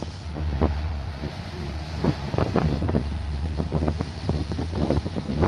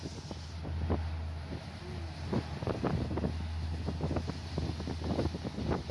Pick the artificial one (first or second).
first